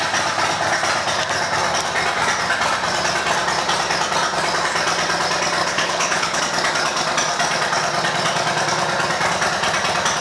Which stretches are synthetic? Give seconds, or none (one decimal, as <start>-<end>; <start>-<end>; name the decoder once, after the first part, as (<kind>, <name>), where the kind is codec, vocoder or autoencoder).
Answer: 5.6-6.4 (codec, HILCodec)